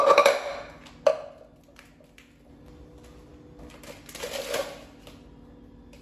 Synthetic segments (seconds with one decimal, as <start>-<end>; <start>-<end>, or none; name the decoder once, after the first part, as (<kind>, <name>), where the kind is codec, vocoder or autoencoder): none